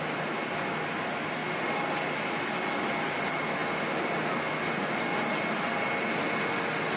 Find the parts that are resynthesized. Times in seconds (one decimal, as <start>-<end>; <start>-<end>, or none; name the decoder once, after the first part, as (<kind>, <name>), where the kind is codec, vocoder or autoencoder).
none